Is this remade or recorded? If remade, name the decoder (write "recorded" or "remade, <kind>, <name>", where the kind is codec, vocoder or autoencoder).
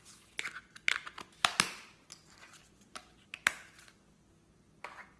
recorded